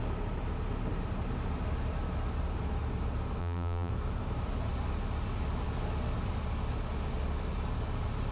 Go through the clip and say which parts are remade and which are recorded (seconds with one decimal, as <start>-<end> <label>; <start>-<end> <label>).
0.0-3.4 recorded; 3.4-3.9 remade; 3.9-8.3 recorded